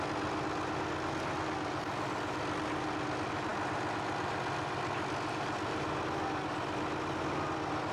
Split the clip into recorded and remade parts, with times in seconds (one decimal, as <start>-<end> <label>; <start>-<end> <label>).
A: 0.0-7.9 recorded